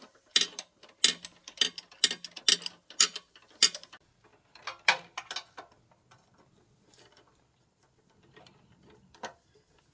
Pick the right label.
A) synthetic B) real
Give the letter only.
B